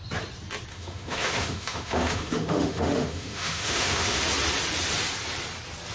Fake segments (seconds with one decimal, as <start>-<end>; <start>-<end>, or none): 0.7-4.2